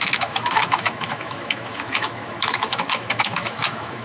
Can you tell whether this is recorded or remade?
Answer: remade